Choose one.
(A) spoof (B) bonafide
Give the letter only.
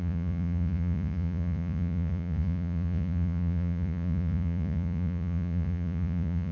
A